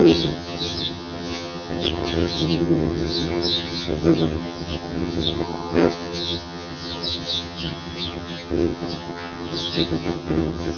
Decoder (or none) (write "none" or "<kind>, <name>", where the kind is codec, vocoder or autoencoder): vocoder, HiFi-GAN